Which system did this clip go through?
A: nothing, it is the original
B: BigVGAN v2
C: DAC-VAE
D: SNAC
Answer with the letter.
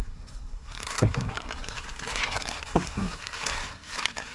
D